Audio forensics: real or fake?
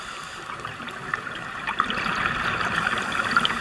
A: fake